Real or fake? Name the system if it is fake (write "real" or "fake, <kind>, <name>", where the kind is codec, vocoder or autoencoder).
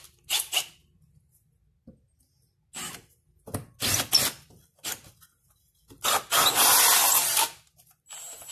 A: real